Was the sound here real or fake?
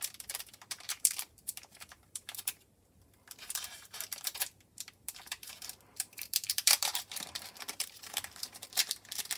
fake